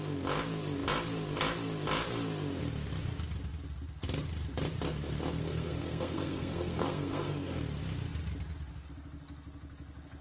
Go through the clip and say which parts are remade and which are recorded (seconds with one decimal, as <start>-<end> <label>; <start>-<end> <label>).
0.0-5.4 recorded; 5.4-7.6 remade; 7.6-10.2 recorded